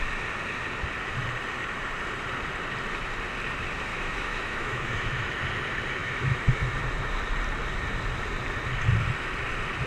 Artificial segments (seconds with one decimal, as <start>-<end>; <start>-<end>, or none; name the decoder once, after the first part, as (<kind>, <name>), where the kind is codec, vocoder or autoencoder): 3.9-5.3 (autoencoder, DAC-VAE); 6.0-6.7